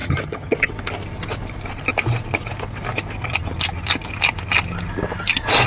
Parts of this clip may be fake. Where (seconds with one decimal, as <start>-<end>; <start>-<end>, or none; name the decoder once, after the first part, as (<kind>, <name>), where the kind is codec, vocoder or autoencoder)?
0.0-0.7 (vocoder, HiFi-GAN)